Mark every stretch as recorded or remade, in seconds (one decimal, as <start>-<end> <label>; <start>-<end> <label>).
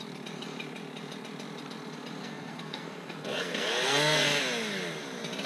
0.0-2.2 recorded; 2.2-4.4 remade; 4.4-5.5 recorded